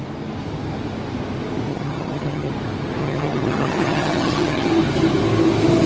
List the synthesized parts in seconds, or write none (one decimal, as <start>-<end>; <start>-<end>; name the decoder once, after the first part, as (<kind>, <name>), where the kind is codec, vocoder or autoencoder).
1.7-2.5 (vocoder, HiFi-GAN); 3.0-4.7